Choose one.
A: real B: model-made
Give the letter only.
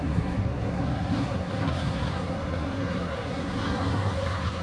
B